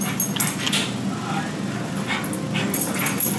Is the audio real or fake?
real